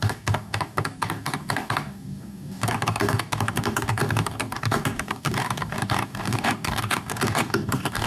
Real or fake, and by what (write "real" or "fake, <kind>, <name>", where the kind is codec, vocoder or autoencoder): fake, codec, DAC